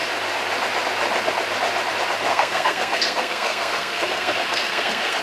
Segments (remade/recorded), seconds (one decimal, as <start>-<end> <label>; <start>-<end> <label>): 0.0-2.3 recorded; 2.3-5.2 remade